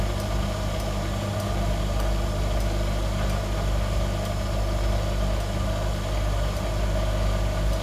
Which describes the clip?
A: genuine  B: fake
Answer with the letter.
A